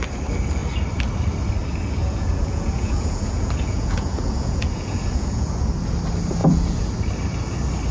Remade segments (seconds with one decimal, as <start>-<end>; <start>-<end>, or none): 2.0-5.6; 6.4-6.9